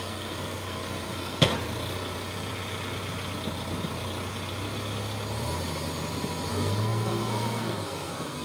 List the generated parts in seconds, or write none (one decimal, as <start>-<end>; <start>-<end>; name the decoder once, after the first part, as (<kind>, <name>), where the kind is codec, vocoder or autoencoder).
0.0-1.5 (codec, SNAC); 6.5-8.4